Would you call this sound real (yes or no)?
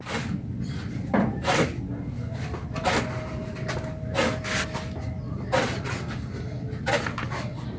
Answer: yes